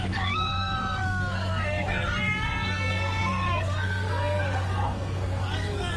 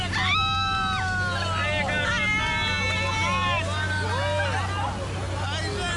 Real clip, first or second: second